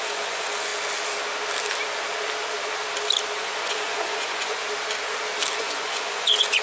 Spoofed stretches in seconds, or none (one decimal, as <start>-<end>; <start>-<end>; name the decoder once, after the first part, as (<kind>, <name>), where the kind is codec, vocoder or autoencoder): 0.0-0.7 (vocoder, Vocos); 3.4-4.6; 5.6-6.6